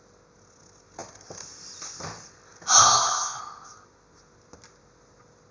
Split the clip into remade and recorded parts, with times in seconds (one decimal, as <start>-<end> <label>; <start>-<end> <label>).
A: 0.0-2.8 recorded; 2.8-3.4 remade; 3.4-5.5 recorded